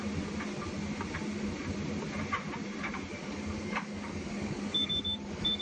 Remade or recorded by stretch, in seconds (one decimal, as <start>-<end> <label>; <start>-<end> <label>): 0.0-3.2 recorded; 3.2-5.6 remade